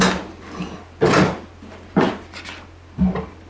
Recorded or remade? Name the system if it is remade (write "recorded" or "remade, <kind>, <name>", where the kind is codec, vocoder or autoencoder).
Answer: recorded